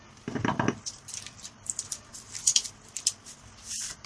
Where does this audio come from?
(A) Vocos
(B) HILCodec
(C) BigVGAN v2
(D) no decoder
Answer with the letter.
C